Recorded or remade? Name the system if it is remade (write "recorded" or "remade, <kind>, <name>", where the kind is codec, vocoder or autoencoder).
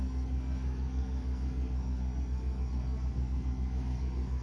remade, codec, SNAC